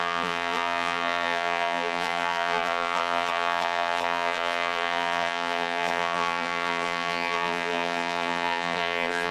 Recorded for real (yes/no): no